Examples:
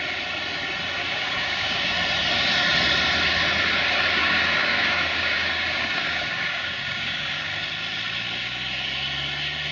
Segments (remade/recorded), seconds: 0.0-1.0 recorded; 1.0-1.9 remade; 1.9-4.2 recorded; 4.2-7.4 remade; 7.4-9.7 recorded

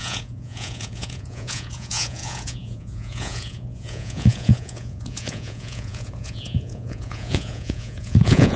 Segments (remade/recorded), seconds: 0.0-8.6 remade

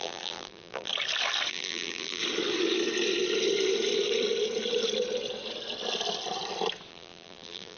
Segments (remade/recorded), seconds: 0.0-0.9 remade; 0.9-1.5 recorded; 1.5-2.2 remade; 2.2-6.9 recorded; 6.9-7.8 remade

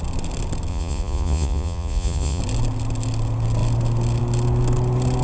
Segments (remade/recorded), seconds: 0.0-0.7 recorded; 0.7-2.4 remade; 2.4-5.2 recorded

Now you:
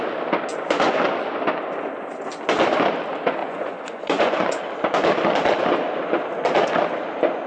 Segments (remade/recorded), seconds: 0.0-0.5 recorded; 0.5-1.0 remade; 1.0-3.4 recorded; 3.4-4.5 remade; 4.5-7.5 recorded